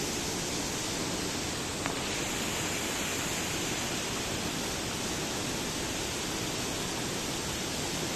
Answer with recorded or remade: recorded